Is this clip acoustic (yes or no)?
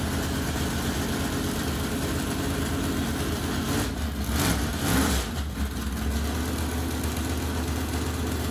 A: yes